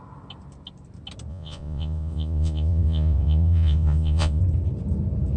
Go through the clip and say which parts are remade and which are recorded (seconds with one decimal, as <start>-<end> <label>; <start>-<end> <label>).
0.0-1.3 recorded; 1.3-4.4 remade; 4.4-5.4 recorded